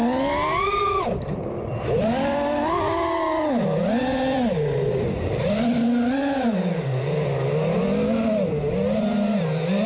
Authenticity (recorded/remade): recorded